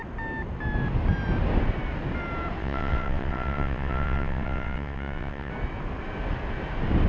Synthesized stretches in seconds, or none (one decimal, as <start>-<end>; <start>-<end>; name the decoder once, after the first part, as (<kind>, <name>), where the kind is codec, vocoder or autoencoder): 2.6-5.5 (vocoder, WaveNeXt)